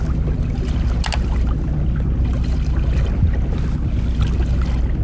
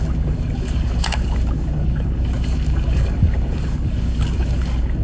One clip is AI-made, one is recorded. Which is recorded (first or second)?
first